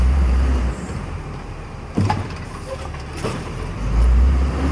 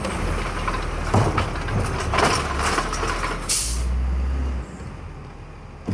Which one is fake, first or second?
first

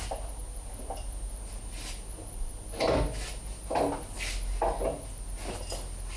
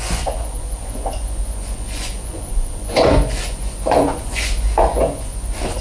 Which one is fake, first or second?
second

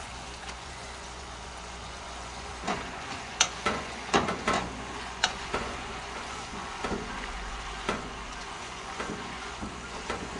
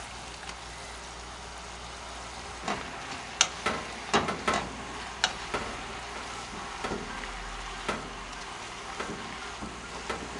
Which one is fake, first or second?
first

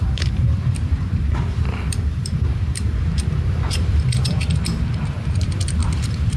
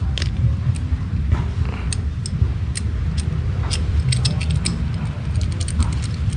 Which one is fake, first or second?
first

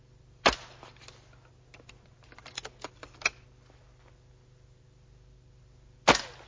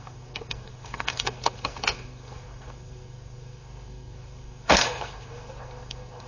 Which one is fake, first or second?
second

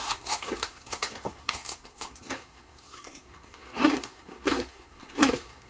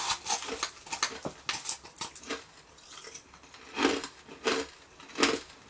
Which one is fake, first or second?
first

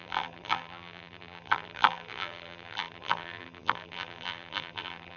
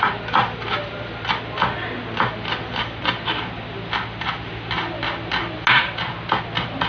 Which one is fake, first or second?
first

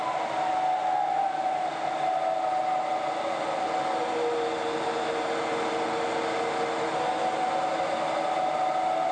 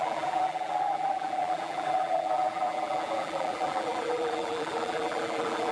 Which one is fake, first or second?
second